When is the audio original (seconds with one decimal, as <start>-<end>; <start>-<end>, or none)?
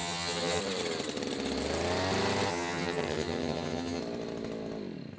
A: 0.6-2.5; 4.0-5.2